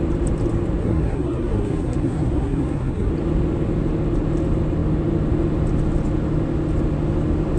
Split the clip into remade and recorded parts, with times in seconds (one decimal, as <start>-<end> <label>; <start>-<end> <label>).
0.0-0.8 recorded; 0.8-3.1 remade; 3.1-7.6 recorded